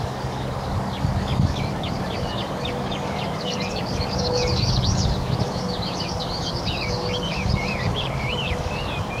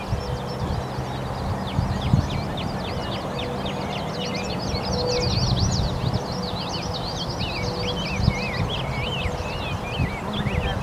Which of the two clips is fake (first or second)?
first